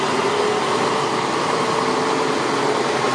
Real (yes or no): yes